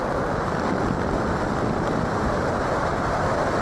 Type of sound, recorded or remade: recorded